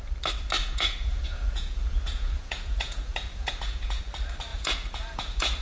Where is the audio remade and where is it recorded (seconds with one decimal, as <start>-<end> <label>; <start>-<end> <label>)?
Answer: 0.0-0.6 recorded; 0.6-4.0 remade; 4.0-4.5 recorded; 4.5-5.6 remade